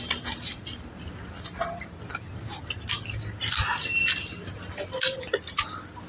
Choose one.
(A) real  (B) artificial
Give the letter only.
A